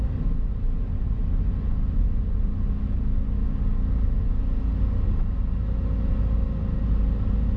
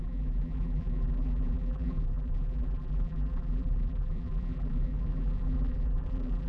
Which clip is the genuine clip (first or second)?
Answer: first